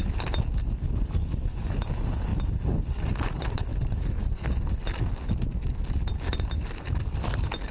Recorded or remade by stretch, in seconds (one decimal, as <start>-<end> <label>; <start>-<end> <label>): 0.0-7.7 recorded